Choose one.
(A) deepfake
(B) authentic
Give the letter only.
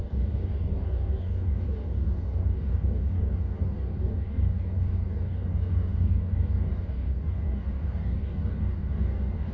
A